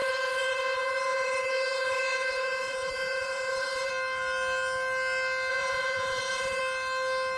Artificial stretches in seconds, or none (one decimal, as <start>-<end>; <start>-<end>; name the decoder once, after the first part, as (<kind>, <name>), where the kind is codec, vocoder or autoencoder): 0.0-3.9 (vocoder, Vocos); 5.5-6.6